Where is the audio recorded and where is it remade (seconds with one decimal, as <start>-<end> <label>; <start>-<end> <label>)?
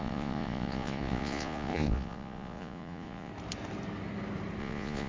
0.0-3.3 remade; 3.3-4.6 recorded; 4.6-5.1 remade